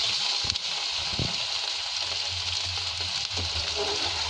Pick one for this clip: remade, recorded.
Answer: recorded